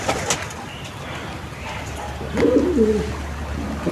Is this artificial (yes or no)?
no